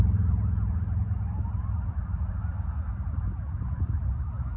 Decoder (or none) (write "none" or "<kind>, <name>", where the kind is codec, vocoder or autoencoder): none